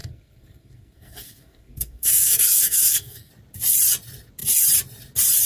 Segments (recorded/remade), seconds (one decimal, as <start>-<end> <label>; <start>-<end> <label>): 0.0-3.3 remade; 3.3-5.5 recorded